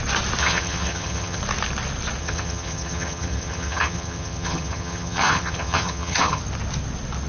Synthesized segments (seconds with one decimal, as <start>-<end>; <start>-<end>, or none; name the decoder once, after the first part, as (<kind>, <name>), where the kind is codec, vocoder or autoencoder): 0.4-1.4 (vocoder, HiFi-GAN); 2.2-6.4